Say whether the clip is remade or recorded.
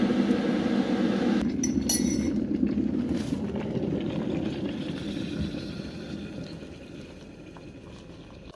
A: recorded